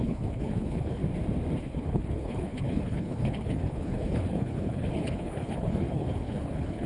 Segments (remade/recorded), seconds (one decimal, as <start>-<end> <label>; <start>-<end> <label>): 0.0-1.0 remade; 1.0-1.6 recorded; 1.6-6.9 remade